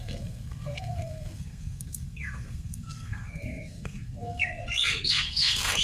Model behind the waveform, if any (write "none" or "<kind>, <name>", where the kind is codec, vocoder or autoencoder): codec, SNAC